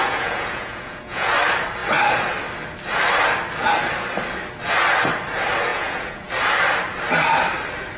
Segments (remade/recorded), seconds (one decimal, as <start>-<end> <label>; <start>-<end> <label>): 0.0-1.3 remade; 1.3-5.7 recorded; 5.7-6.3 remade; 6.3-8.0 recorded